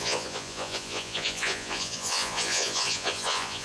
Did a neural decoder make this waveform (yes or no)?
yes